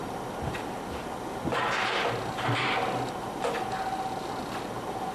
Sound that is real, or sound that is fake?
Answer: real